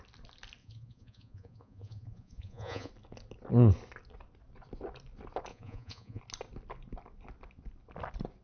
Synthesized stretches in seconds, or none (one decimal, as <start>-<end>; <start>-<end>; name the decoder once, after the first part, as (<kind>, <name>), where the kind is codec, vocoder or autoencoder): 0.6-2.9 (vocoder, Vocos); 5.5-6.2